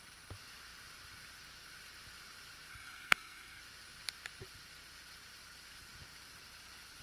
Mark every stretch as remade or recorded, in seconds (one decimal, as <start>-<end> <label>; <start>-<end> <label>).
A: 0.0-2.7 recorded; 2.7-3.6 remade; 3.6-7.0 recorded